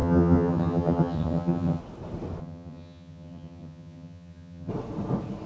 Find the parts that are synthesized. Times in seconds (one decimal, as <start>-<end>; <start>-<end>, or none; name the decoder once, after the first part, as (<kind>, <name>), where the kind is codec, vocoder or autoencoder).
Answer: 0.0-1.8 (vocoder, HiFi-GAN); 2.4-4.7